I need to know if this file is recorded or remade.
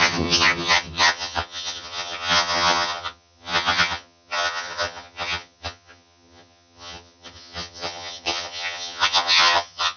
remade